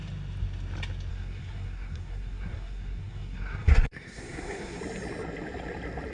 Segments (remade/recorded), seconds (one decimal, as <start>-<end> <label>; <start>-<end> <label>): 0.0-1.1 recorded; 1.1-4.8 remade; 4.8-6.1 recorded